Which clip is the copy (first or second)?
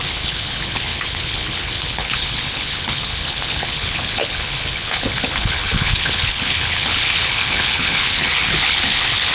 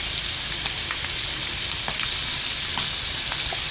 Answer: first